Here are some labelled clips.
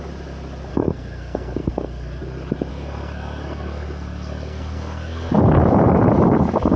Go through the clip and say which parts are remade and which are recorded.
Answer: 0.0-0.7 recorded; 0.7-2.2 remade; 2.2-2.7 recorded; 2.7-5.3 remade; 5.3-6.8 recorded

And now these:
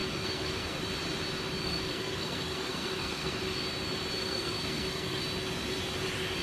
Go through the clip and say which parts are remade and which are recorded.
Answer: 0.0-0.8 remade; 0.8-1.6 recorded; 1.6-3.4 remade; 3.4-4.2 recorded; 4.2-5.2 remade; 5.2-6.4 recorded

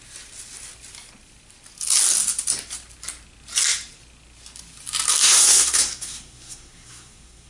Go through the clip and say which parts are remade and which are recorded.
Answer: 0.0-5.2 recorded; 5.2-7.5 remade

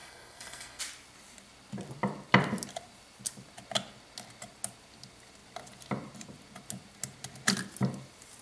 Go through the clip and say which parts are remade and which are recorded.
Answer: 0.0-0.8 remade; 0.8-8.4 recorded

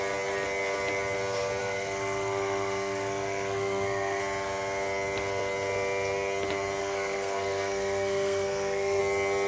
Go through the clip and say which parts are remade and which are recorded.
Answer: 0.0-1.6 recorded; 1.6-4.2 remade; 4.2-6.8 recorded; 6.8-9.0 remade; 9.0-9.5 recorded

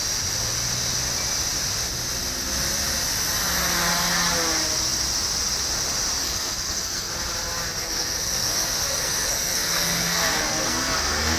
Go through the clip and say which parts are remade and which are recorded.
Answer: 0.0-6.2 recorded; 6.2-7.1 remade; 7.1-7.8 recorded; 7.8-11.4 remade